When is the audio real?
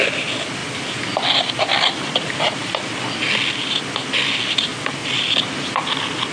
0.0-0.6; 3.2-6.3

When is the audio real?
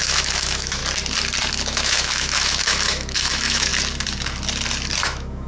0.8-1.5; 3.7-5.0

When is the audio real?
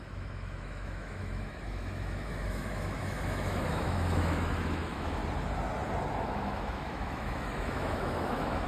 5.2-6.2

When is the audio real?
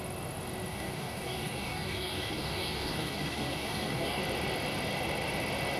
0.0-0.7; 4.2-5.8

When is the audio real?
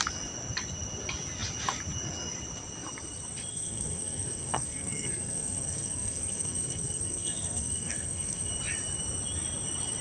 0.0-3.5; 8.5-10.0